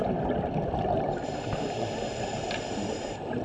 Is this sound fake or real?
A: real